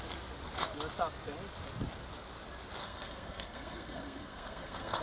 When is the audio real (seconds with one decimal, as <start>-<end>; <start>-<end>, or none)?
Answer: 0.0-2.8